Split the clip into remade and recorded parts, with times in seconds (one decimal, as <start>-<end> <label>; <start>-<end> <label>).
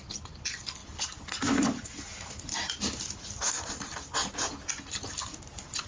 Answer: 0.0-5.9 recorded